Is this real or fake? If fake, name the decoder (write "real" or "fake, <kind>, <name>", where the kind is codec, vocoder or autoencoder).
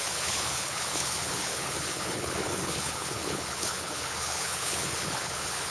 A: fake, codec, HILCodec